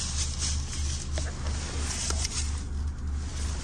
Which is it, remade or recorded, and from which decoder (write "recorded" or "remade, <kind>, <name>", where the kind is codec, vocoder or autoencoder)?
recorded